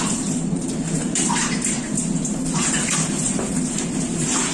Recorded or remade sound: remade